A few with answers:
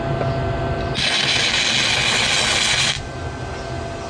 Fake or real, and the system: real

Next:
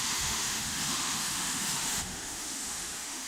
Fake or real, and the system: fake, autoencoder, DAC-VAE